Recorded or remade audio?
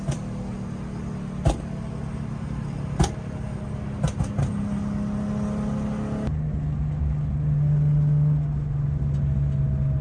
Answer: recorded